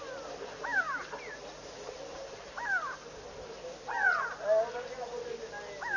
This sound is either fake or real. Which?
real